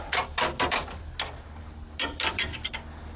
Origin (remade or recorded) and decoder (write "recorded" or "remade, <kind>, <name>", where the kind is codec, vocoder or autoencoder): recorded